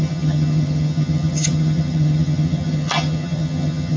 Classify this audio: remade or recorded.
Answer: remade